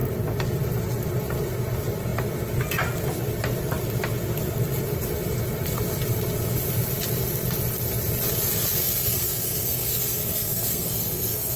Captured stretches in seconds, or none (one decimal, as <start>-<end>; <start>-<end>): 0.0-8.8